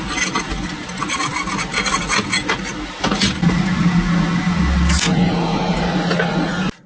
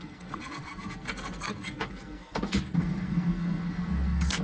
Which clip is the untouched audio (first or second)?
first